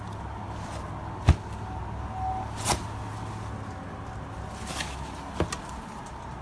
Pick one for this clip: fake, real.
real